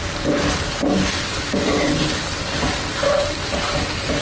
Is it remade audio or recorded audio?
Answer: recorded